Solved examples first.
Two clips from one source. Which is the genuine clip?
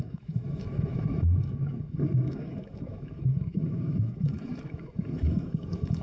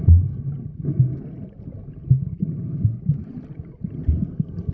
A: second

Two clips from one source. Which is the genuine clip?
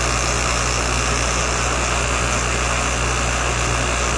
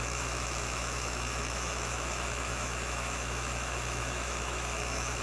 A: first